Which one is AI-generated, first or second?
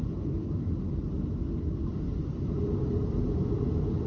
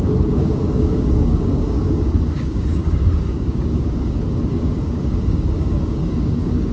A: second